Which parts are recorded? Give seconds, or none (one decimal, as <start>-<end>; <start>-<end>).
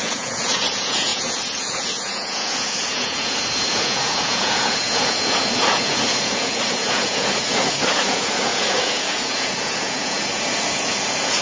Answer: none